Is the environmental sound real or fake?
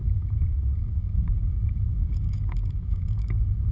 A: fake